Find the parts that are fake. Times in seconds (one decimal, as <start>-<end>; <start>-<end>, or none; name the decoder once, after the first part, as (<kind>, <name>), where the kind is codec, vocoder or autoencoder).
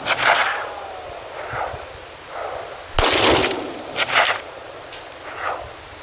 0.4-1.9 (vocoder, BigVGAN v2); 3.4-4.8